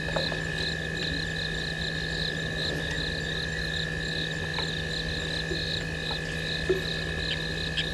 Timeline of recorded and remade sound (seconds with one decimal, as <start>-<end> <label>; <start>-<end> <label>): 0.0-7.9 recorded